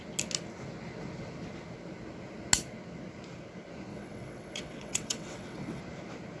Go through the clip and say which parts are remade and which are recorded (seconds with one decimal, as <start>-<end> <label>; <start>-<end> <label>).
0.0-3.9 recorded; 3.9-5.8 remade; 5.8-6.4 recorded